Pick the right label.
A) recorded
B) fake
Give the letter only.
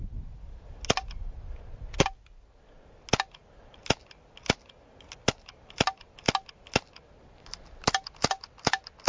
A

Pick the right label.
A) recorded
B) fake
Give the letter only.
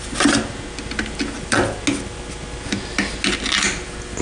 A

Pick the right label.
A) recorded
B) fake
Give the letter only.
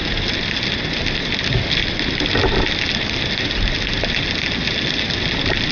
A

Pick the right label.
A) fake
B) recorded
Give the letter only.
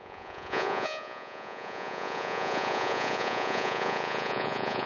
A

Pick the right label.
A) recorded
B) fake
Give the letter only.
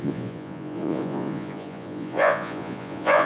B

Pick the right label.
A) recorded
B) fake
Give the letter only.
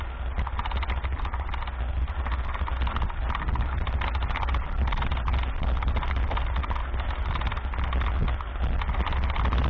A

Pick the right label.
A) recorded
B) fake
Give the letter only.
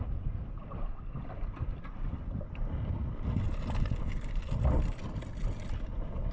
A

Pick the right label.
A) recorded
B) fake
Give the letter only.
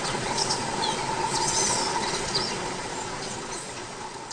B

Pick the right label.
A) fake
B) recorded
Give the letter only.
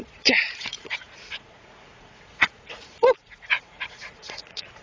A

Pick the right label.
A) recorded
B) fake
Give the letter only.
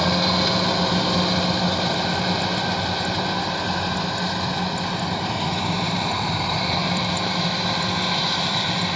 A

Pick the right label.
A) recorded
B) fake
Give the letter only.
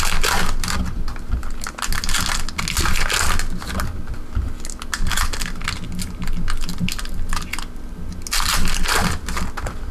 A